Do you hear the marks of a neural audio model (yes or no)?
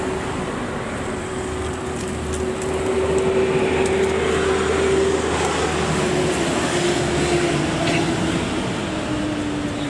no